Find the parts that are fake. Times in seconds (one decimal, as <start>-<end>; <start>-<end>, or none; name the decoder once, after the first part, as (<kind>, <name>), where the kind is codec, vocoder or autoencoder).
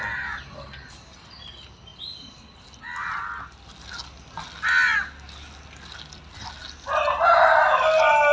none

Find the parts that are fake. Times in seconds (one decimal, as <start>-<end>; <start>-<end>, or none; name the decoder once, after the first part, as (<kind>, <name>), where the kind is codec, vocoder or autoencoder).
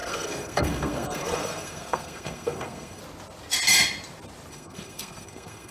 0.0-3.0 (codec, SNAC); 4.5-5.7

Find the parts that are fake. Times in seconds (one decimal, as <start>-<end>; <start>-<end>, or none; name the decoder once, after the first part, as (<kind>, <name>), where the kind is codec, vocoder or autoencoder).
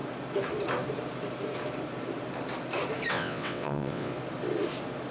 3.1-4.1 (vocoder, WaveNeXt)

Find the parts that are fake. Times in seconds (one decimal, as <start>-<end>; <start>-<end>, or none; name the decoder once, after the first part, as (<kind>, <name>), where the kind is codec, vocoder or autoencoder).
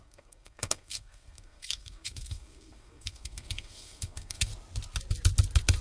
0.0-4.5 (codec, SNAC)